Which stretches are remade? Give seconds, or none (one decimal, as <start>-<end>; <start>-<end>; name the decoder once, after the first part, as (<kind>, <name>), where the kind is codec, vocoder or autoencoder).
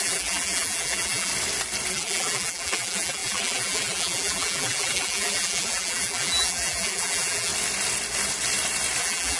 0.0-1.3 (vocoder, BigVGAN v2); 1.9-7.5; 9.0-9.4